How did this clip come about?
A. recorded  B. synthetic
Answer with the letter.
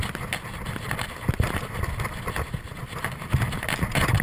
A